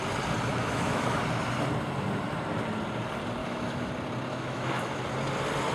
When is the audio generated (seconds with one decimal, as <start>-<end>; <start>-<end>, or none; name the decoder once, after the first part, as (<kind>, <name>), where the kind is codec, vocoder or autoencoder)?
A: 0.5-1.2 (autoencoder, DAC-VAE); 3.4-3.9; 4.3-5.0